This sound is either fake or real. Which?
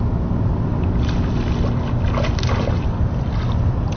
real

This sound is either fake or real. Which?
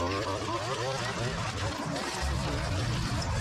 real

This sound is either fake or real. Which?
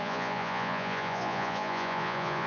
fake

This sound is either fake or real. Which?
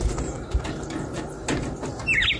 real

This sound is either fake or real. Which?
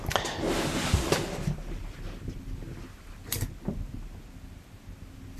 real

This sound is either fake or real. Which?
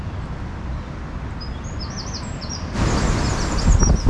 real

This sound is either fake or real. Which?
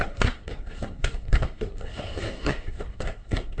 fake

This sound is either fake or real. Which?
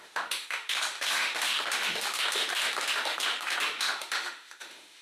fake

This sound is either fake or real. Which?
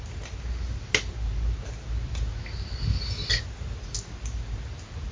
real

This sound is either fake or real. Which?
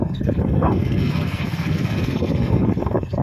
fake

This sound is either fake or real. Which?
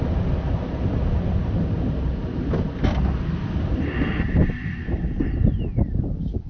real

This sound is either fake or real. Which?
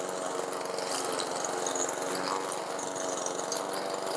real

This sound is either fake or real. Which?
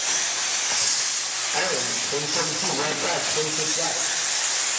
real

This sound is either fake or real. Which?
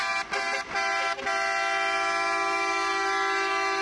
real